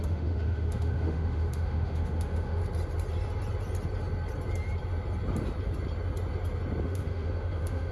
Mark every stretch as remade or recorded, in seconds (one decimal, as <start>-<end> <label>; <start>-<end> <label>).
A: 0.0-2.6 remade; 2.6-6.8 recorded; 6.8-7.9 remade